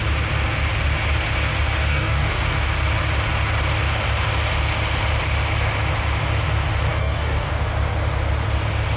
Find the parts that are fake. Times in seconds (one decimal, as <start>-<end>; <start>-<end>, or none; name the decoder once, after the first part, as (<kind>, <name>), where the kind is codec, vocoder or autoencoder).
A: 1.9-2.4 (codec, DAC); 6.9-7.5